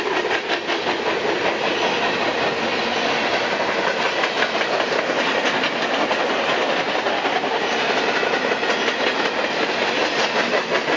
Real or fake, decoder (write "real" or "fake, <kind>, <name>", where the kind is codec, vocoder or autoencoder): real